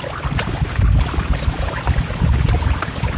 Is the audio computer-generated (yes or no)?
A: no